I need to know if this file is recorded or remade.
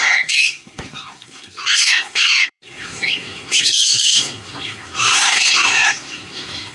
remade